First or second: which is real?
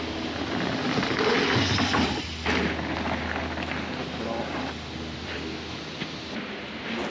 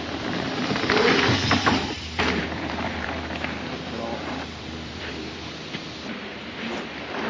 first